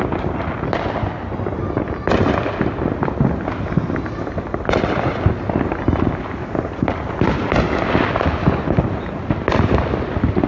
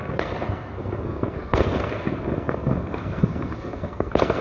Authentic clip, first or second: first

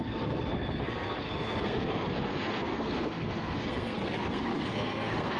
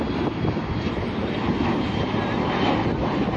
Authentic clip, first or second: second